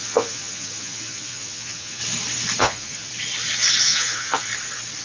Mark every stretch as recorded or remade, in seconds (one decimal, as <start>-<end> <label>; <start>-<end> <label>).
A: 0.0-2.0 remade; 2.0-2.6 recorded; 2.6-3.1 remade; 3.1-3.8 recorded; 3.8-4.5 remade; 4.5-5.0 recorded